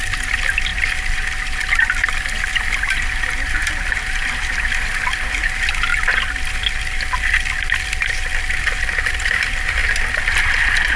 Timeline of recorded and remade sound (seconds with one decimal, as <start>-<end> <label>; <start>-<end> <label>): 0.0-5.9 remade; 5.9-8.6 recorded; 8.6-9.8 remade; 9.8-11.0 recorded